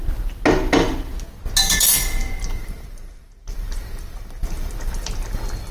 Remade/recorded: recorded